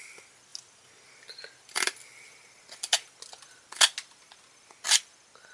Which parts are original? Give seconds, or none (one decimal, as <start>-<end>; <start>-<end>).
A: 0.0-5.5